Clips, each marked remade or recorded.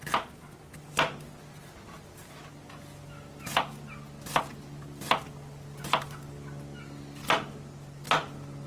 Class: recorded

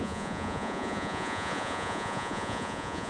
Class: remade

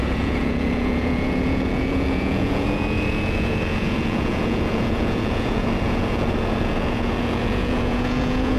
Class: remade